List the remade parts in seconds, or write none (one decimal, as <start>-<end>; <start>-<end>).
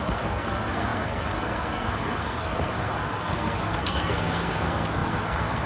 0.0-5.7